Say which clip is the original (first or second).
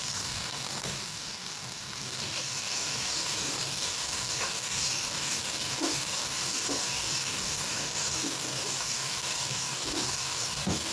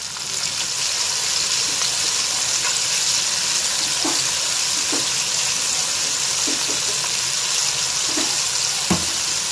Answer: second